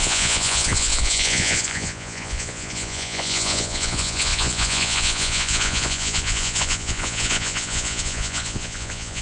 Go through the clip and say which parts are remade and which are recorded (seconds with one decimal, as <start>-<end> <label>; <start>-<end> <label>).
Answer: 0.0-9.2 remade